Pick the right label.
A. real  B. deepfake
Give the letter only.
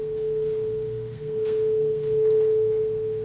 B